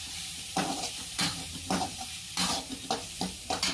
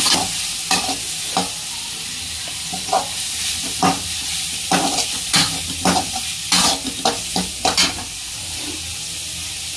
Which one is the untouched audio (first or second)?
second